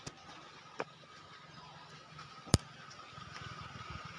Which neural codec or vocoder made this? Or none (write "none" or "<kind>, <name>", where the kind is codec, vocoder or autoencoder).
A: none